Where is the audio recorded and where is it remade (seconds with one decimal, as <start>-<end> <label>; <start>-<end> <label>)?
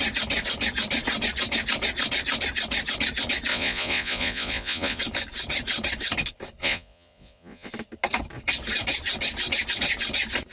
0.0-3.5 recorded; 3.5-5.0 remade; 5.0-6.6 recorded; 6.6-7.7 remade; 7.7-10.5 recorded